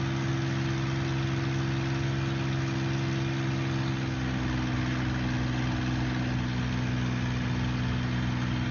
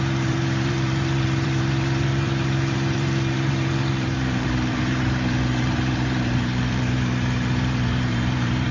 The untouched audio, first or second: first